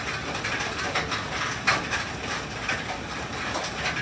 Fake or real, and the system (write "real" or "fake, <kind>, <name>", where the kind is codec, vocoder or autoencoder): real